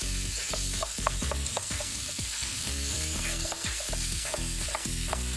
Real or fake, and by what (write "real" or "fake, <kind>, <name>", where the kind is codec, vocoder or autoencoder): fake, codec, SNAC